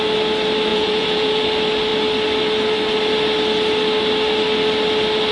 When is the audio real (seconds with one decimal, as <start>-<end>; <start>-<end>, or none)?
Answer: 0.0-0.7; 1.3-5.3